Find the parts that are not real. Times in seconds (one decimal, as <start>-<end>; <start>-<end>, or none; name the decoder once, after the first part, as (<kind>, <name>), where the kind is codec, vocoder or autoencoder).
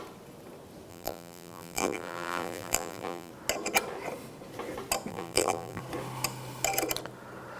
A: 0.9-3.3 (vocoder, BigVGAN v2); 5.1-5.8